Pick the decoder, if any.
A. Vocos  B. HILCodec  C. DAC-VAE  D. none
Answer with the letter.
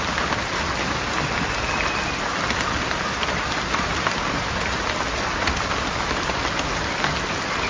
D